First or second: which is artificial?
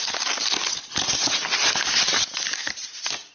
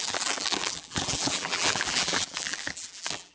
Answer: second